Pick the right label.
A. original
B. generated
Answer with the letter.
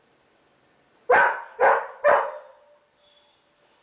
A